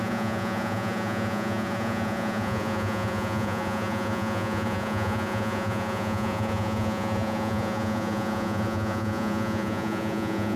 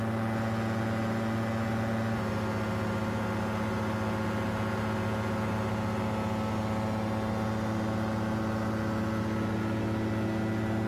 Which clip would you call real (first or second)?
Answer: second